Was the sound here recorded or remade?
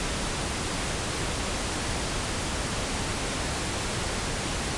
recorded